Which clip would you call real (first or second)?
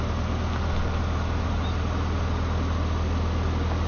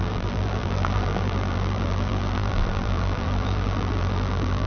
first